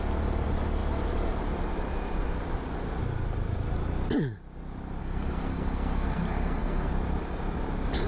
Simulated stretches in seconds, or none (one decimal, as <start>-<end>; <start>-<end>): 5.0-6.9